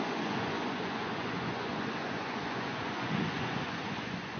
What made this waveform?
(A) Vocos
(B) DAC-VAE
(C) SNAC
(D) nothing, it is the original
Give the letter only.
A